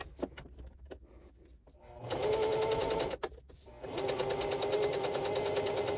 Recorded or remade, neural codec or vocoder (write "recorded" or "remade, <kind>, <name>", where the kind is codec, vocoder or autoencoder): recorded